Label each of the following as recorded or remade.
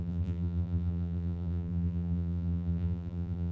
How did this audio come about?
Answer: remade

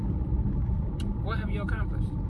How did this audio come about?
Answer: remade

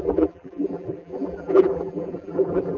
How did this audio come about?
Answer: remade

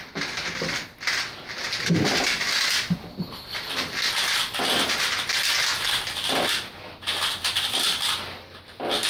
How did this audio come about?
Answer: recorded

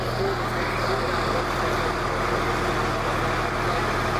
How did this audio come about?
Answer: recorded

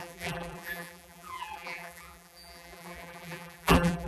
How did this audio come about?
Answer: remade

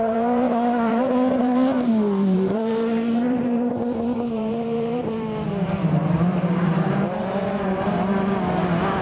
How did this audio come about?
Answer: remade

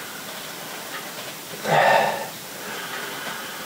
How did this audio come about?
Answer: recorded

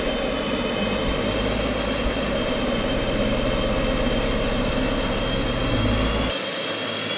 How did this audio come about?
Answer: recorded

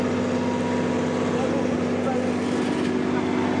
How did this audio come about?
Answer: recorded